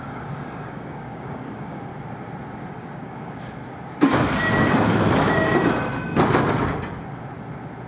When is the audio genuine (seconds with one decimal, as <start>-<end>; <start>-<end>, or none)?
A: 1.9-2.7; 3.6-7.9

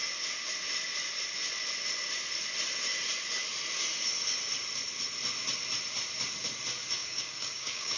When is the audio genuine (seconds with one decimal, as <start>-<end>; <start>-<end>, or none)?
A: 0.0-7.0

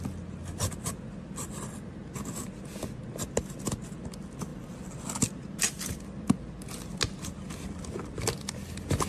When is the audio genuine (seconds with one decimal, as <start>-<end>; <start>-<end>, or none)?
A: 0.0-9.1

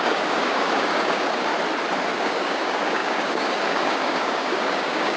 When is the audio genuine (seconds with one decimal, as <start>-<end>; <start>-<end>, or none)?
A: 1.5-2.2